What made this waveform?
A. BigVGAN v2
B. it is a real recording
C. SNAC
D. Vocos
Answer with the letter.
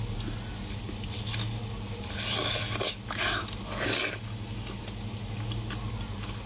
B